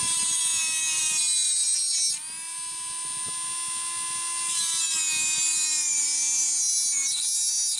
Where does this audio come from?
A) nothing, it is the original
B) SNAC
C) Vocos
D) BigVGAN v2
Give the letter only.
A